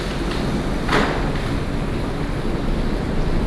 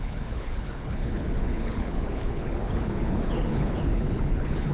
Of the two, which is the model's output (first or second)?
second